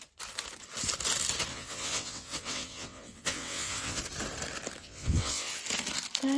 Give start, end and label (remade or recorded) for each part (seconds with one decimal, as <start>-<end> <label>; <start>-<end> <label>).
0.0-1.5 recorded; 1.5-4.0 remade; 4.0-4.8 recorded; 4.8-5.6 remade; 5.6-6.4 recorded